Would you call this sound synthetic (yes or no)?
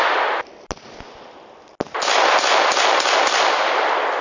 no